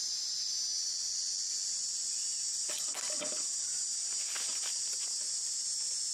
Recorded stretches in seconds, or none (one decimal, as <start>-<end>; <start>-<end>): 0.0-6.1